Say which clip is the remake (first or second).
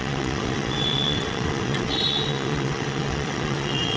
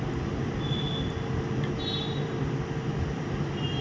first